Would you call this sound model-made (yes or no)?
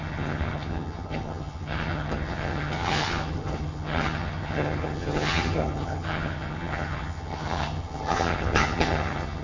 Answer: yes